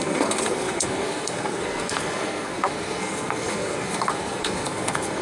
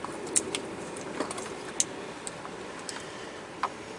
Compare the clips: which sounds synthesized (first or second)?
first